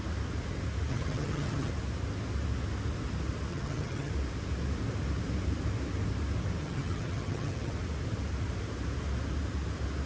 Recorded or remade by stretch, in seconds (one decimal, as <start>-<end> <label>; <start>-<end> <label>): 0.0-0.9 recorded; 0.9-1.7 remade; 1.7-3.5 recorded; 3.5-4.1 remade; 4.1-6.6 recorded; 6.6-7.7 remade; 7.7-10.1 recorded